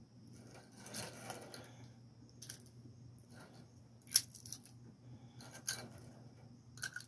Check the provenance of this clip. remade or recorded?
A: recorded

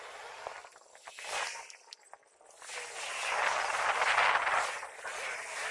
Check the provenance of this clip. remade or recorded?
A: recorded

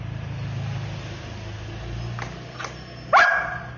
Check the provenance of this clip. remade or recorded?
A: recorded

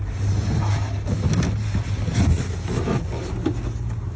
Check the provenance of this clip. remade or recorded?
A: recorded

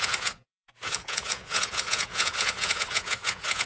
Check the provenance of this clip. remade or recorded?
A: remade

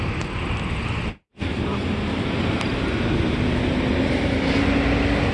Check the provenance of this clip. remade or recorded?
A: recorded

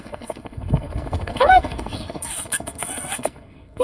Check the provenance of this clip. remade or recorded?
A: remade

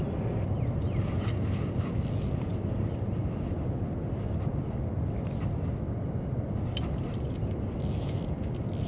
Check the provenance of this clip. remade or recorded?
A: recorded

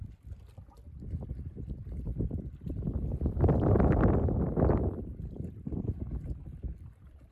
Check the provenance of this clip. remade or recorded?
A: remade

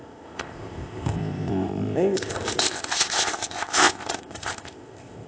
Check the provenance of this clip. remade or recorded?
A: remade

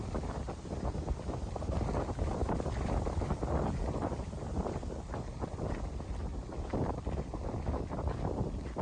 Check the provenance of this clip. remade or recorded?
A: remade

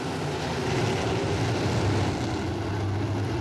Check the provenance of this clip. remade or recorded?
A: recorded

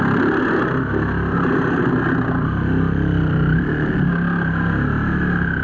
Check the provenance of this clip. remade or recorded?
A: recorded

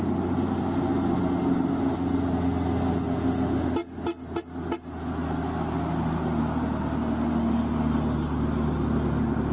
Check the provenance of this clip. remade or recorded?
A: recorded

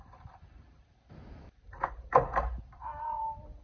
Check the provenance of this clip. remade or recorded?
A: remade